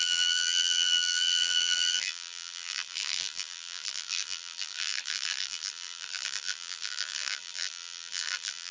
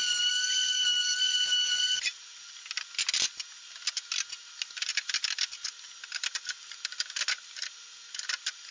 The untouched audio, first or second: second